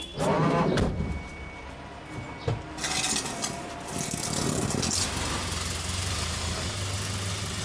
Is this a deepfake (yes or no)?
no